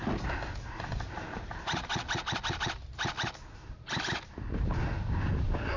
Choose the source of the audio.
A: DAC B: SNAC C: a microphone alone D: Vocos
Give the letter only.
C